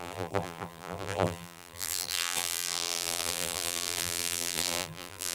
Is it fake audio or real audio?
fake